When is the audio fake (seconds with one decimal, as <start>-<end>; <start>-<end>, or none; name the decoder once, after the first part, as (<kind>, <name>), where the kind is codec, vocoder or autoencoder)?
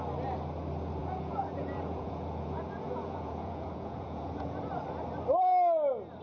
1.0-4.7 (vocoder, Vocos)